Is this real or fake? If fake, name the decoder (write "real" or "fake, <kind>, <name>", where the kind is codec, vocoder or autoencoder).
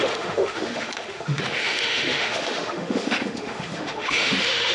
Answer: fake, autoencoder, DAC-VAE